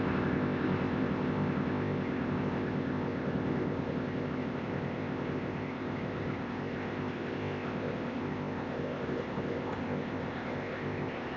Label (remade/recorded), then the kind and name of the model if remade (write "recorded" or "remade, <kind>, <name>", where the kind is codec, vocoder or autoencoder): remade, codec, ZipCodec